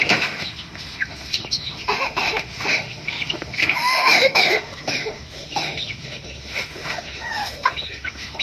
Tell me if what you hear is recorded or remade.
remade